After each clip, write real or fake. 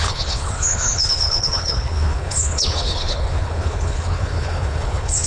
fake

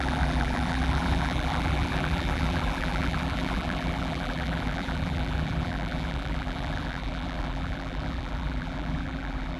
fake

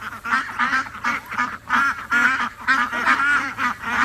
fake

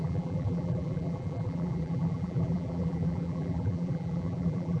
fake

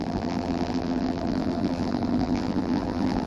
fake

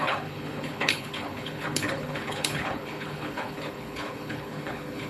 fake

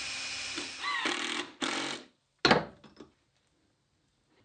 real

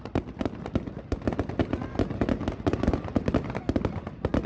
real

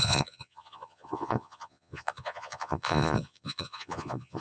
fake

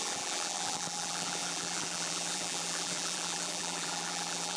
fake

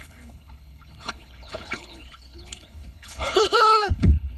fake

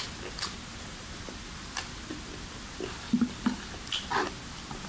real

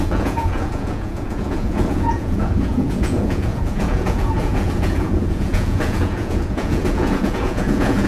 fake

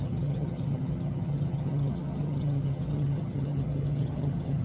fake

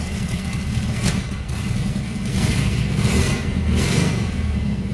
fake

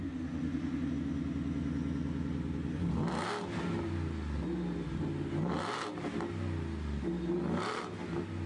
real